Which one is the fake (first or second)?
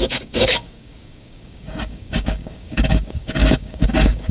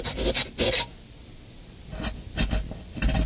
first